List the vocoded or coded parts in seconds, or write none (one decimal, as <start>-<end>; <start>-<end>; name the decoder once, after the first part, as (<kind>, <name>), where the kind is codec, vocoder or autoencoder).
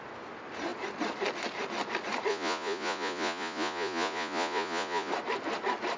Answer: 2.3-5.1 (vocoder, Vocos)